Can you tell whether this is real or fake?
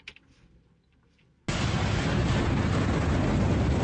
real